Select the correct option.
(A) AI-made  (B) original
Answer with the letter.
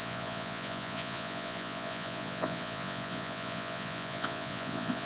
A